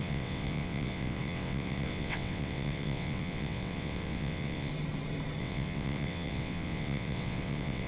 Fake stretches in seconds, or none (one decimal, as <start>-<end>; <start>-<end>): 0.0-4.7; 5.4-7.9

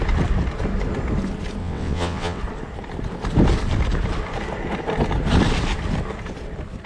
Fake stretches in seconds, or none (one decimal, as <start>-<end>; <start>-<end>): 1.6-2.4

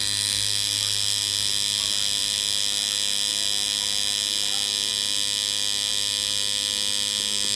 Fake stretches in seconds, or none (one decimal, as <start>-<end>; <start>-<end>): none